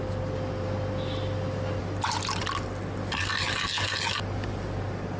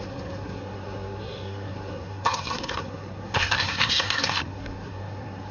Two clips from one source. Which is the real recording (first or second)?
first